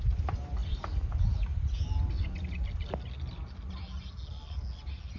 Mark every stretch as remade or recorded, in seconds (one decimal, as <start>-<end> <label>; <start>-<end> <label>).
0.0-5.2 recorded